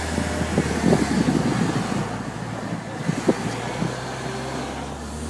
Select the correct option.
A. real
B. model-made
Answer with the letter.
A